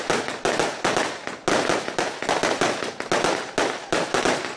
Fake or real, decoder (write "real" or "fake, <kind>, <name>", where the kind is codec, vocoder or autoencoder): real